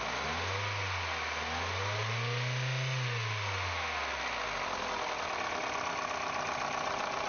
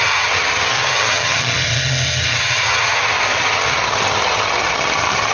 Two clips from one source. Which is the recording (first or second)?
first